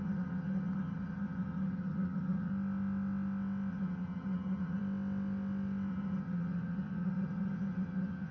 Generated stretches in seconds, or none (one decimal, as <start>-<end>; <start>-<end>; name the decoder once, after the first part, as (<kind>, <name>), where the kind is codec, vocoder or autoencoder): 0.0-2.5 (vocoder, HiFi-GAN); 3.7-4.8; 5.9-8.3